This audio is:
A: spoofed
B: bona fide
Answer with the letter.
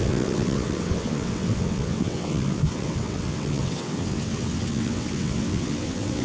A